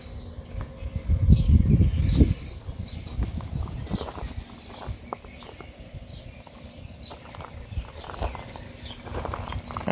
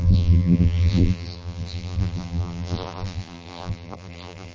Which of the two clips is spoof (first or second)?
second